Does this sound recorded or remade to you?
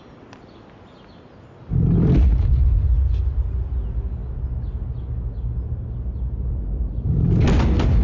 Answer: recorded